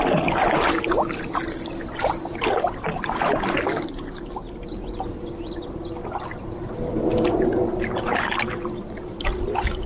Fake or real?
real